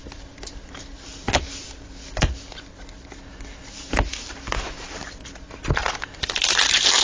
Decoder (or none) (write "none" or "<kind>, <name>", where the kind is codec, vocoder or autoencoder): none